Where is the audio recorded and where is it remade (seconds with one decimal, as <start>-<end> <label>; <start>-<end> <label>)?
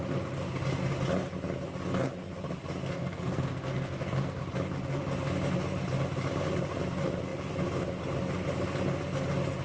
0.0-2.8 recorded; 2.8-4.4 remade; 4.4-9.6 recorded